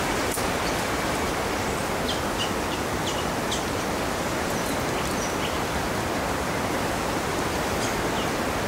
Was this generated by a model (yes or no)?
no